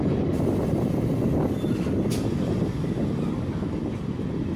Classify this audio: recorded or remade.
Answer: recorded